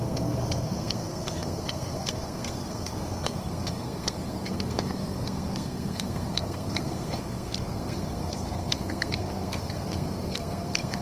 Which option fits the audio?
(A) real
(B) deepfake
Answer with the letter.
B